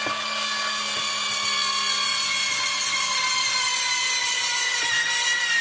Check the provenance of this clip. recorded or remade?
recorded